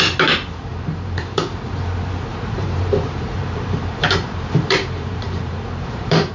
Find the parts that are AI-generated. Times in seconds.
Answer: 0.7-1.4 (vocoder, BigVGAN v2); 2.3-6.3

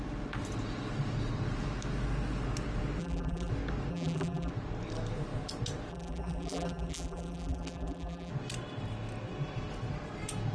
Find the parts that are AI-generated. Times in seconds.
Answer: 3.0-3.5 (vocoder, BigVGAN v2); 3.9-4.5; 5.9-8.3

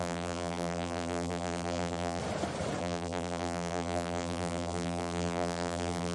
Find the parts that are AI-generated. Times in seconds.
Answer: 0.0-2.2 (vocoder, BigVGAN v2); 2.8-6.1